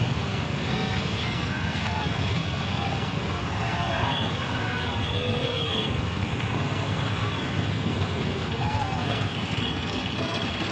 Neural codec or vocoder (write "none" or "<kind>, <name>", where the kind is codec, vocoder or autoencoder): codec, SNAC